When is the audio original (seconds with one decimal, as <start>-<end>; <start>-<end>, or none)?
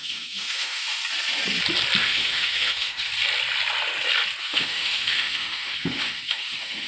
1.0-2.0; 3.1-4.4